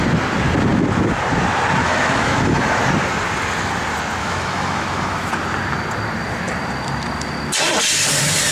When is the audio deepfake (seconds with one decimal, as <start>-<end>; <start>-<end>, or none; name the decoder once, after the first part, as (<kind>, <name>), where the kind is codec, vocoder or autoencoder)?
1.8-2.8 (autoencoder, DAC-VAE); 4.2-5.3